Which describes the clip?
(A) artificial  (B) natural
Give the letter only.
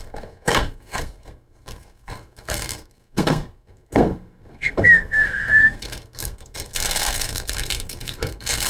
A